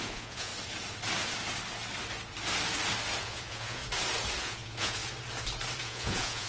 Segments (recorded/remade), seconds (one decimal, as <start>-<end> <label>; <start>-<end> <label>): 0.0-0.5 remade; 0.5-3.2 recorded; 3.2-3.8 remade; 3.8-4.4 recorded; 4.4-5.0 remade; 5.0-5.8 recorded; 5.8-6.5 remade